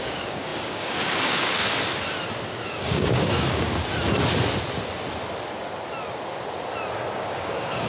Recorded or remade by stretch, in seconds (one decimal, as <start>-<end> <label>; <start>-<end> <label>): 0.0-1.6 remade; 1.6-2.4 recorded; 2.4-3.7 remade; 3.7-7.2 recorded; 7.2-7.9 remade